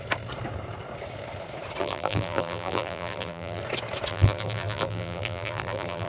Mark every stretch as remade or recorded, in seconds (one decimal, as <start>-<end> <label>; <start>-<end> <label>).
0.0-1.8 recorded; 1.8-3.6 remade; 3.6-4.1 recorded; 4.1-6.1 remade

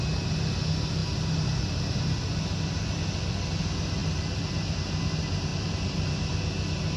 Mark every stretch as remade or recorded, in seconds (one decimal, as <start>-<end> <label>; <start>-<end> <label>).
0.0-4.0 recorded; 4.0-4.8 remade; 4.8-5.5 recorded; 5.5-6.3 remade; 6.3-7.0 recorded

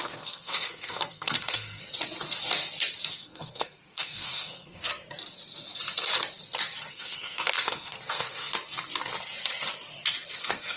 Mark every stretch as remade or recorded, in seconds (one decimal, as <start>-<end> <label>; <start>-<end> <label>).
0.0-1.8 remade; 1.8-3.1 recorded; 3.1-4.9 remade; 4.9-6.9 recorded; 6.9-8.5 remade; 8.5-10.4 recorded; 10.4-10.8 remade